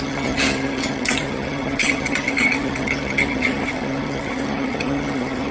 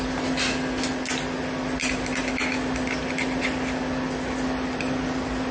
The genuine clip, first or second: second